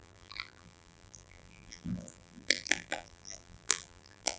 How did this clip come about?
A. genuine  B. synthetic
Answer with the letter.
B